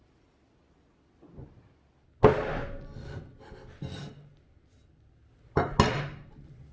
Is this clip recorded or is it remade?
recorded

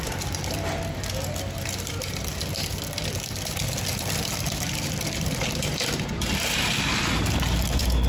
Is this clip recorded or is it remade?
remade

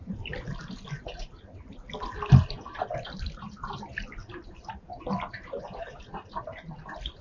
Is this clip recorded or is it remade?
recorded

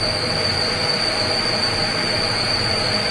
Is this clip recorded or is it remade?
recorded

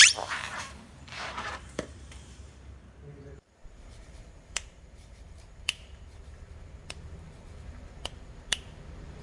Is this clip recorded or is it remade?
remade